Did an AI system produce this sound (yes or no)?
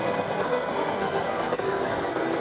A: yes